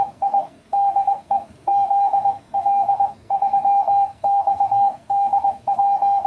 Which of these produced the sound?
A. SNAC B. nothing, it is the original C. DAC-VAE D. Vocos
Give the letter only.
A